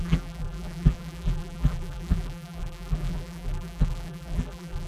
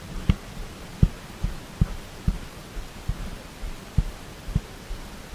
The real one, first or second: second